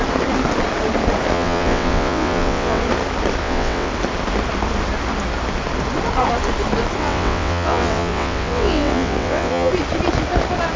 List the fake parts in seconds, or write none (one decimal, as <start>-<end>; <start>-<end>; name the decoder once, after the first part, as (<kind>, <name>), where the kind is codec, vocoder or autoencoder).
1.3-2.8 (vocoder, WaveNeXt); 3.4-3.9; 7.0-9.7